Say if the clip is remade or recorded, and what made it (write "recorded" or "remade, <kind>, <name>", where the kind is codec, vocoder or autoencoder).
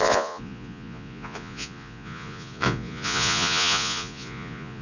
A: remade, vocoder, Vocos